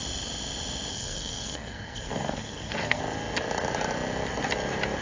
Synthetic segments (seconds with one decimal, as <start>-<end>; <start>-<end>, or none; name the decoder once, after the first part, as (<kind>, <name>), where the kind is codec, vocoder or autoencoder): 0.9-3.0 (codec, SNAC)